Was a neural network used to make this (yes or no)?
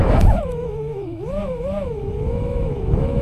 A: yes